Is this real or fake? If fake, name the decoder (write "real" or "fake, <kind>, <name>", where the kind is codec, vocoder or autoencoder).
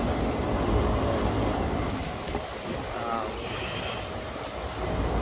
real